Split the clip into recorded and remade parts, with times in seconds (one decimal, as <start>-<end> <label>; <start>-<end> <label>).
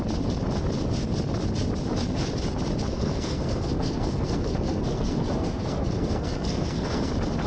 0.0-2.9 recorded; 2.9-7.1 remade; 7.1-7.5 recorded